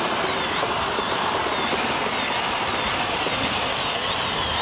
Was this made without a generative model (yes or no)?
yes